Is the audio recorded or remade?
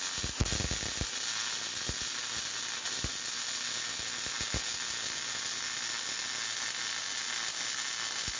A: recorded